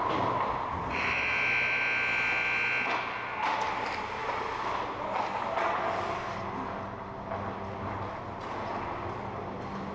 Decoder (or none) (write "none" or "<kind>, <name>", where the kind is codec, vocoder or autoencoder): none